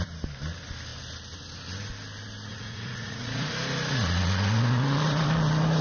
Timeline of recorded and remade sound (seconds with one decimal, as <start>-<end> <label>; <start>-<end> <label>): 0.0-2.5 recorded; 2.5-3.5 remade; 3.5-5.8 recorded